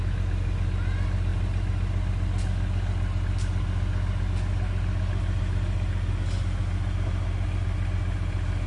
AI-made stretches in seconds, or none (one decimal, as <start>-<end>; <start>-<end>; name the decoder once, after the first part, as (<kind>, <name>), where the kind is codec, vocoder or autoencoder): none

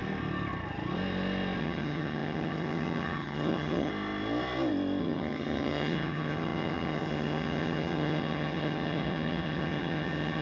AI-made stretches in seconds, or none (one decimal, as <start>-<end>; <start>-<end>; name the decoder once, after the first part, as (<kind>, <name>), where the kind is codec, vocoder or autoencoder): 1.6-3.9 (vocoder, HiFi-GAN); 5.0-10.4

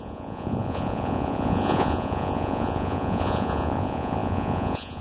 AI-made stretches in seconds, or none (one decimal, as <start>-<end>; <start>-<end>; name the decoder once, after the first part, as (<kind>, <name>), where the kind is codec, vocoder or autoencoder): 0.0-5.0 (vocoder, Vocos)